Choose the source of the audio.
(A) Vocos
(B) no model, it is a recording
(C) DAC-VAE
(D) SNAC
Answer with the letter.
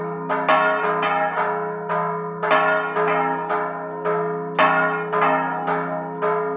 B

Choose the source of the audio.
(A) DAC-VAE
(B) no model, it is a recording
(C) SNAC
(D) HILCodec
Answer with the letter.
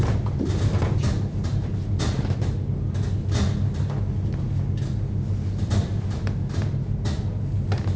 B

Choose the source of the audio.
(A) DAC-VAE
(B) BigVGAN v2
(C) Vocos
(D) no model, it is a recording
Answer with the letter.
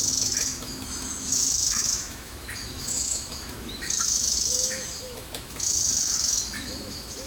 A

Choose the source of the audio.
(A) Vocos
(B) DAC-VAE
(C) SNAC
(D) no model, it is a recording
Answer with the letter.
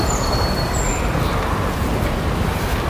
D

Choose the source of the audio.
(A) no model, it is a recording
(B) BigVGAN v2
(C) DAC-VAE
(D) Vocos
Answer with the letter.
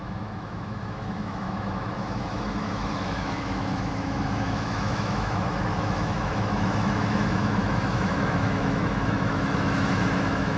C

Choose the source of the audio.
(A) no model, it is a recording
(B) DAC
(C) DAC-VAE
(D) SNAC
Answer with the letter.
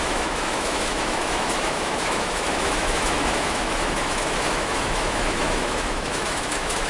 C